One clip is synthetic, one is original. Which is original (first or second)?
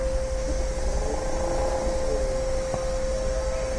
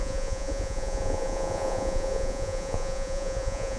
first